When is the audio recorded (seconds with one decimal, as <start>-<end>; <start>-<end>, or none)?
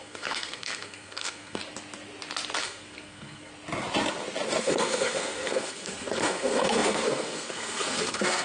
1.6-2.6; 3.5-4.6